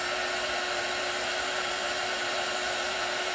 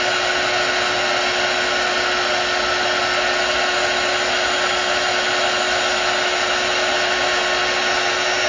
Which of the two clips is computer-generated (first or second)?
first